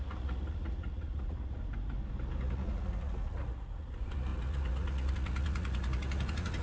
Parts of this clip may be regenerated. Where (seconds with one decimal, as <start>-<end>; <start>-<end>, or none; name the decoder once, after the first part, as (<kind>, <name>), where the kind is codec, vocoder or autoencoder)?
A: 0.0-1.6 (vocoder, Vocos); 2.4-6.6